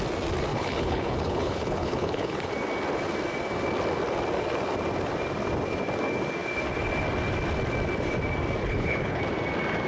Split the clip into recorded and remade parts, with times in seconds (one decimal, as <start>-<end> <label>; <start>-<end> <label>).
0.0-0.5 recorded; 0.5-2.5 remade; 2.5-8.6 recorded; 8.6-9.2 remade; 9.2-9.9 recorded